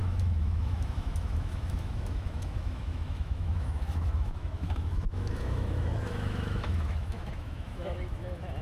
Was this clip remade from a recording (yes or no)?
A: yes